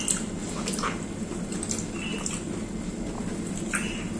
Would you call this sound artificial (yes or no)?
no